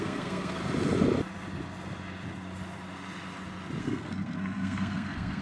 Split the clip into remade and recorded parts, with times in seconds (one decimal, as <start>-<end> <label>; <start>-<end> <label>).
0.0-0.6 remade; 0.6-3.8 recorded; 3.8-5.4 remade